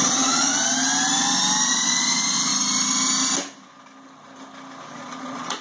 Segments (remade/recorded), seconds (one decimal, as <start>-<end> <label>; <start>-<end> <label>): 0.0-0.5 remade; 0.5-1.7 recorded; 1.7-2.5 remade; 2.5-4.9 recorded; 4.9-5.6 remade

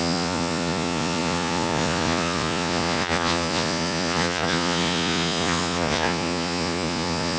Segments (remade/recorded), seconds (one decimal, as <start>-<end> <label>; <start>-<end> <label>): 0.0-7.4 remade

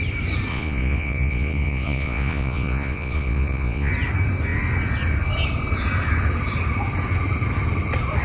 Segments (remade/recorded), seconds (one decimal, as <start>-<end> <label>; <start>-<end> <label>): 0.0-0.5 recorded; 0.5-3.9 remade; 3.9-8.2 recorded

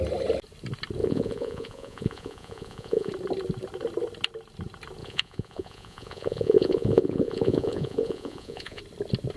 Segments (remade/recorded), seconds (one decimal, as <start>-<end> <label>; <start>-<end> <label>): 0.0-1.0 recorded; 1.0-3.1 remade; 3.1-5.0 recorded; 5.0-8.8 remade; 8.8-9.4 recorded

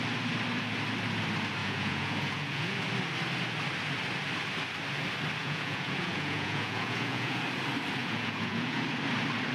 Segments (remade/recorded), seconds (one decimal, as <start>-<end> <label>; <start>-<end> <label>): 0.0-1.6 recorded; 1.6-2.8 remade; 2.8-5.4 recorded; 5.4-7.4 remade; 7.4-8.0 recorded; 8.0-8.8 remade; 8.8-9.5 recorded

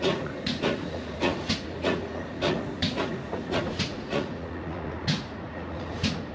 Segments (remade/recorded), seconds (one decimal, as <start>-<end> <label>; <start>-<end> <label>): 0.0-6.3 remade